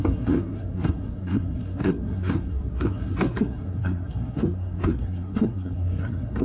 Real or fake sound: fake